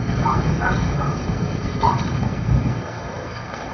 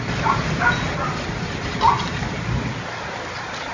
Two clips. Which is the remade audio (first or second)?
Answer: first